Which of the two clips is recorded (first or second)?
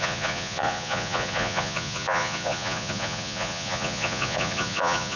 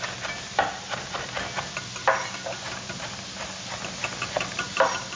second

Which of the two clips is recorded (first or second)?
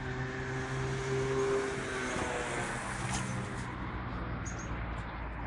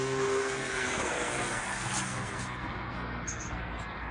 first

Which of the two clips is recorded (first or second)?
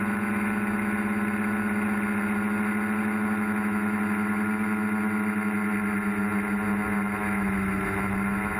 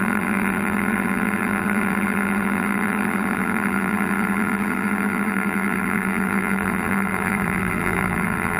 first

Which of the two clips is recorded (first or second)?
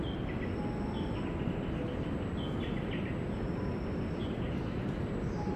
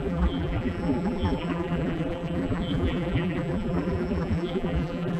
first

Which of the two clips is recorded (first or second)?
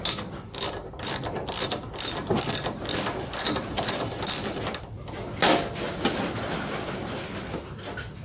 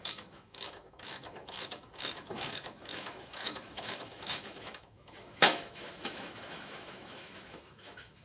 first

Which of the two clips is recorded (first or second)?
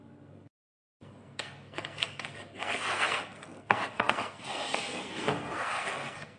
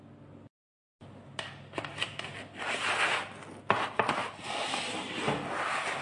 second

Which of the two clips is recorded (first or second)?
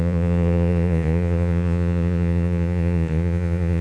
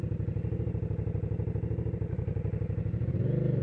second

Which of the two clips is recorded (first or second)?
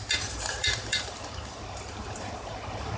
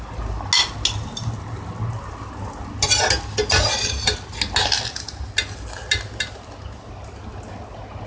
second